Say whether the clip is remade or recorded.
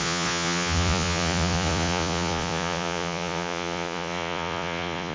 remade